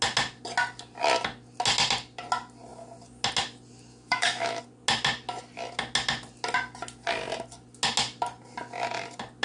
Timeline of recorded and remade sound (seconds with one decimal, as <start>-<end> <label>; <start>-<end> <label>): 0.0-3.9 recorded; 3.9-4.6 remade; 4.6-9.4 recorded